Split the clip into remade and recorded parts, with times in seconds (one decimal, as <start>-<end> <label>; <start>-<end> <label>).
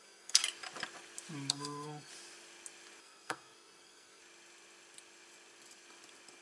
0.0-0.4 remade; 0.4-1.5 recorded; 1.5-2.1 remade; 2.1-3.0 recorded; 3.0-4.2 remade; 4.2-6.4 recorded